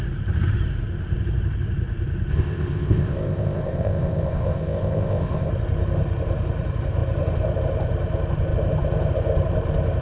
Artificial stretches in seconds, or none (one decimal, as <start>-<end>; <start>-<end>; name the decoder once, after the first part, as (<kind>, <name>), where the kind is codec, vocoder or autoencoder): 2.3-5.5 (codec, ZipCodec)